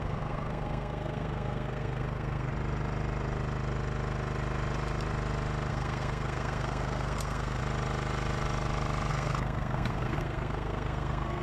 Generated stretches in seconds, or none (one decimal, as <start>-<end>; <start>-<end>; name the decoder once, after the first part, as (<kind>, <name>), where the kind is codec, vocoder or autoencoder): 0.0-2.5 (codec, SNAC); 5.7-7.6; 9.1-11.4